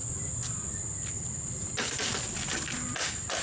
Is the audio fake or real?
real